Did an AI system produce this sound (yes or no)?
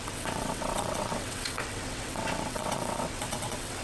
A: yes